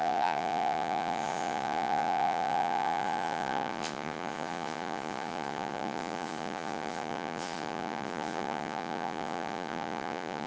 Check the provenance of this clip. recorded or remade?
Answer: remade